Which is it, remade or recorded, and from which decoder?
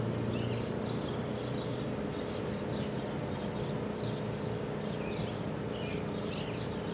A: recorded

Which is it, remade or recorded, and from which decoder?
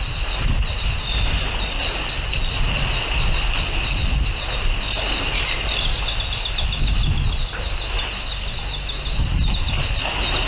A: recorded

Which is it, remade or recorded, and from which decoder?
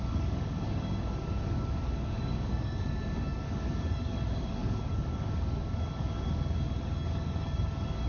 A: remade, codec, DAC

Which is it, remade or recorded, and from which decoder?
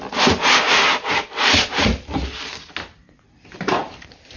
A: recorded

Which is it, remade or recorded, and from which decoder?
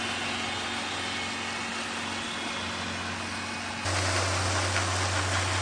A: recorded